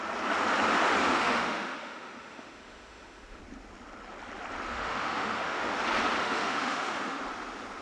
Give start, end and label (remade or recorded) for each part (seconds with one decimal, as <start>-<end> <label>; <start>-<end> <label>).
0.0-1.1 recorded; 1.1-3.4 remade; 3.4-4.7 recorded; 4.7-5.8 remade; 5.8-6.2 recorded; 6.2-7.2 remade; 7.2-7.8 recorded